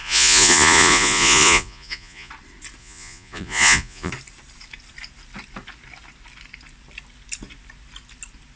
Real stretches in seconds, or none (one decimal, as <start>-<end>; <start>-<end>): 2.3-2.8; 4.1-8.6